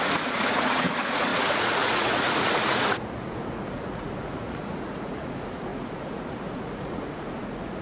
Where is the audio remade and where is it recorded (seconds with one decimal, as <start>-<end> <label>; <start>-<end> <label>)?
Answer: 0.0-7.8 remade